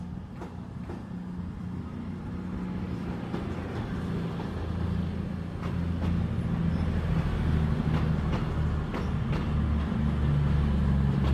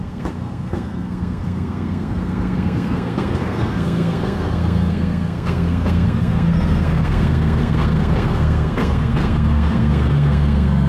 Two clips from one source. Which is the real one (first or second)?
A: first